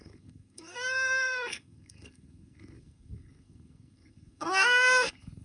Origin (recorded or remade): remade